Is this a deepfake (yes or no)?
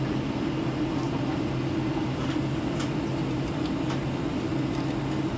no